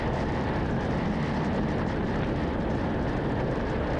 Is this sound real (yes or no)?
yes